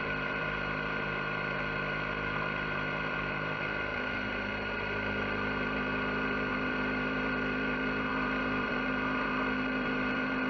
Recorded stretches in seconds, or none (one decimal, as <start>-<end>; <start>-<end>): none